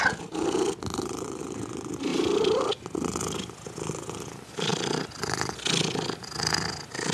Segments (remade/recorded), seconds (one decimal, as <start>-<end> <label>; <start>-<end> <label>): 0.0-2.1 recorded; 2.1-2.7 remade; 2.7-7.1 recorded